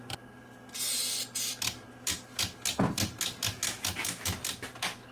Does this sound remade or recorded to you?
recorded